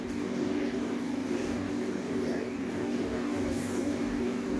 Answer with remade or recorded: remade